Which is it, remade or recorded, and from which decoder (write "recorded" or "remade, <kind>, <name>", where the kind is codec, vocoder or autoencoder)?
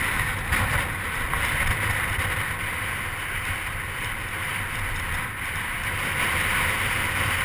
recorded